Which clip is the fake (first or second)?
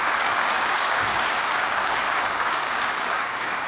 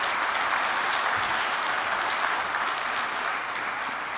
first